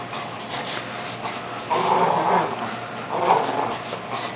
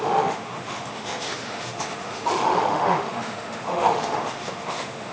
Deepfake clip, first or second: second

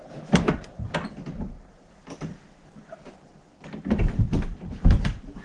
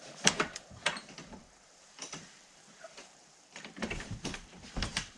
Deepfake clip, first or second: second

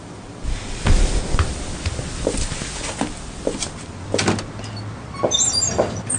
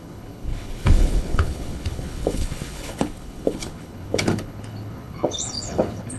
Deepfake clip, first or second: second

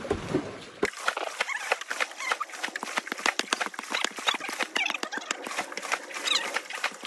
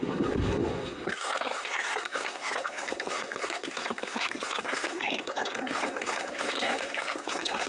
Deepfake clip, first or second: second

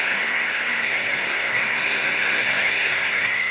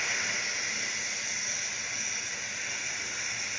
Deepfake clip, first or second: first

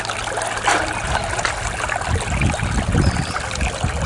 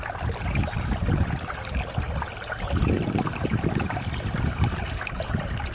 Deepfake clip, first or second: second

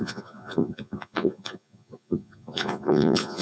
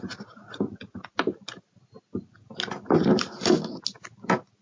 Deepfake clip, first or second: first